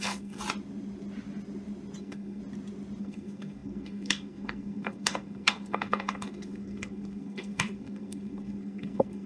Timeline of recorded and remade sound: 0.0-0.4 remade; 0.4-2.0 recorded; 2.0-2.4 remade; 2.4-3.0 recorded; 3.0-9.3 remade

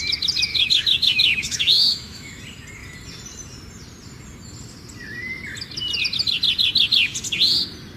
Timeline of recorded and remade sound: 0.0-0.5 recorded; 0.5-2.4 remade; 2.4-8.0 recorded

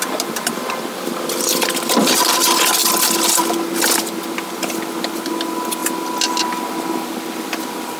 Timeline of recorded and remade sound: 0.0-8.0 recorded

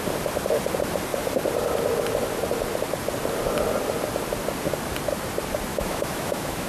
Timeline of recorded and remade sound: 0.0-5.7 recorded; 5.7-6.7 remade

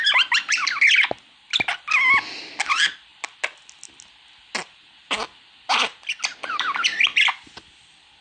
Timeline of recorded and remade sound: 0.0-8.2 recorded

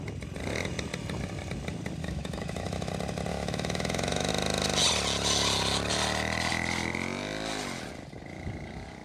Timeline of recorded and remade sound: 0.0-2.0 recorded; 2.0-2.9 remade; 2.9-3.3 recorded; 3.3-4.3 remade; 4.3-9.0 recorded

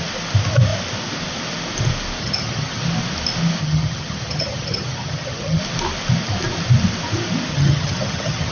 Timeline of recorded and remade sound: 0.0-2.2 recorded; 2.2-2.8 remade; 2.8-3.6 recorded; 3.6-5.6 remade; 5.6-7.5 recorded; 7.5-8.5 remade